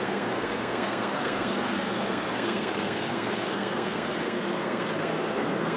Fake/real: fake